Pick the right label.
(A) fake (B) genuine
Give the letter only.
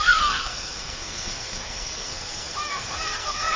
A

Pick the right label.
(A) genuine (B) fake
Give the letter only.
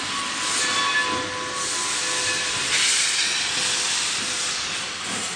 A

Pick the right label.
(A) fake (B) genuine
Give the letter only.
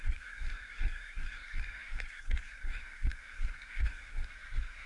A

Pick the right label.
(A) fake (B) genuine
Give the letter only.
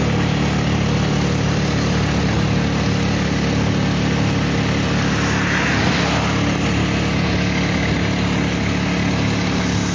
B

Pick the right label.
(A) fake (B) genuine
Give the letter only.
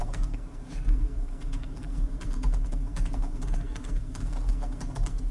A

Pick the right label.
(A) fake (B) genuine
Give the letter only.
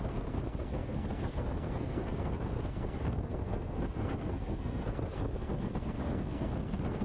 A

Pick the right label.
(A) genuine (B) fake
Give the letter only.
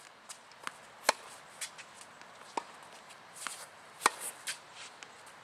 A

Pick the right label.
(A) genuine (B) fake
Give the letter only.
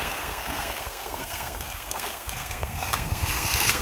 B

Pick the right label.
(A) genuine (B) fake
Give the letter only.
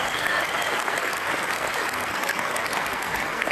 B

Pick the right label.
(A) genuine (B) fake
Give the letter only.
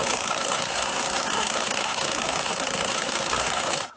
B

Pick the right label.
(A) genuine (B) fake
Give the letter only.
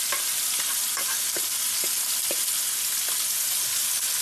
A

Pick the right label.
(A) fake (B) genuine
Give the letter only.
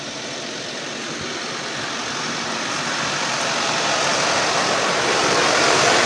B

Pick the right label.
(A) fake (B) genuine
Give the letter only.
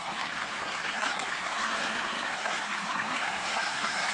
A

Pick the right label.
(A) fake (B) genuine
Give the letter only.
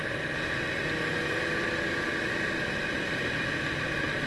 B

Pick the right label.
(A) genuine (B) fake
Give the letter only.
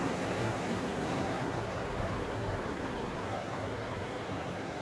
B